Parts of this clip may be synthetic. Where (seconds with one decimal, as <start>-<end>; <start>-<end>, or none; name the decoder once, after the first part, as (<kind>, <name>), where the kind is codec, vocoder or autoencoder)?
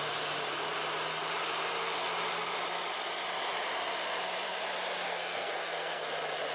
5.1-6.1 (codec, SNAC)